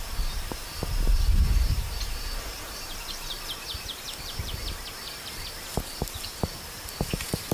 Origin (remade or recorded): remade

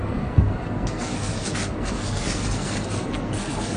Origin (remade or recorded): remade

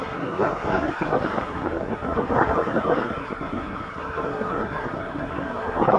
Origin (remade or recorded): remade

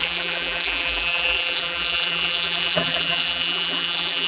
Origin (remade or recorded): remade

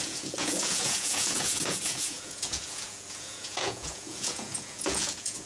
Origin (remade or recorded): remade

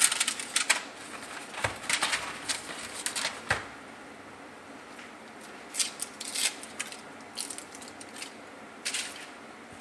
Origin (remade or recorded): recorded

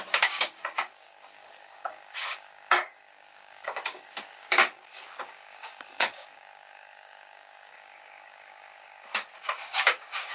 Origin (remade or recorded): remade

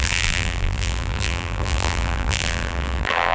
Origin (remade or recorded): remade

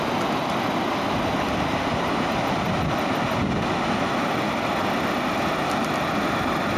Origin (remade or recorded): recorded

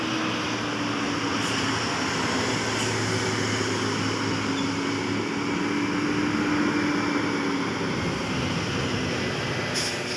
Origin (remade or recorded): recorded